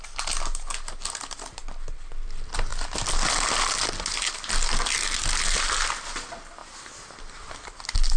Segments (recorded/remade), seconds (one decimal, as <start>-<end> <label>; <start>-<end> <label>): 0.0-8.2 recorded

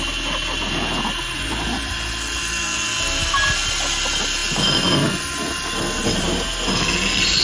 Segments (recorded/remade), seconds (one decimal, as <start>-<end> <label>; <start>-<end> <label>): 0.0-7.4 recorded

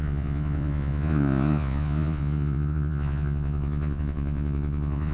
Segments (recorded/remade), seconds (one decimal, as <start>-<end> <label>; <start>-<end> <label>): 0.0-5.1 remade

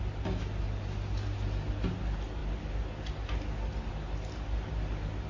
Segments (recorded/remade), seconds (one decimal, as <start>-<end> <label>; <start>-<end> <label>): 0.0-5.3 recorded

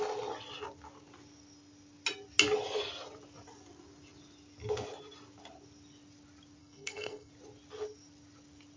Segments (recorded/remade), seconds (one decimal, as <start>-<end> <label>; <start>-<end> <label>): 0.0-6.6 recorded; 6.6-7.3 remade; 7.3-8.8 recorded

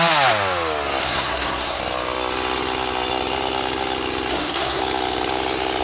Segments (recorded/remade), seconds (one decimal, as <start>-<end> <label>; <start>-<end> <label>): 0.0-1.0 recorded; 1.0-1.8 remade; 1.8-4.3 recorded; 4.3-4.8 remade; 4.8-5.8 recorded

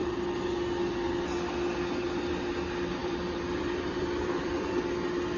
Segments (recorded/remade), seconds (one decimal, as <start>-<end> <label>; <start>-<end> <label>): 0.0-3.0 recorded; 3.0-4.8 remade; 4.8-5.4 recorded